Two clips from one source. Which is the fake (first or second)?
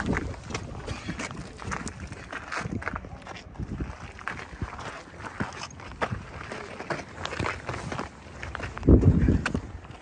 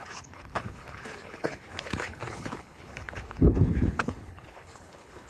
second